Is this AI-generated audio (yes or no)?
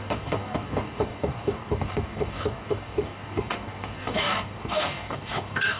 yes